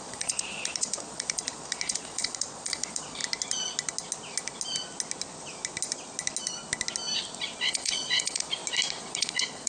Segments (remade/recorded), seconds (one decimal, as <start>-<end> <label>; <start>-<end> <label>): 0.0-3.2 remade; 3.2-7.7 recorded; 7.7-8.6 remade; 8.6-9.1 recorded; 9.1-9.7 remade